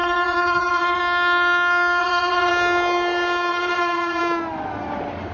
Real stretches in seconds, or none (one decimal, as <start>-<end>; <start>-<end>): 1.0-2.0; 2.5-3.5; 4.2-5.3